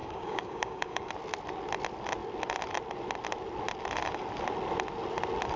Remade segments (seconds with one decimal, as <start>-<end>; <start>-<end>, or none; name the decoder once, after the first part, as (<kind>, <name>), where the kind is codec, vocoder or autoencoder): 0.0-1.1 (codec, DAC)